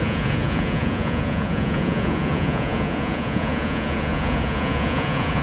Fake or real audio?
fake